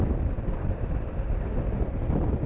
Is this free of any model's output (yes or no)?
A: yes